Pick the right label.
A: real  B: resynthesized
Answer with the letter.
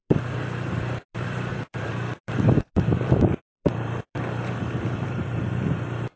B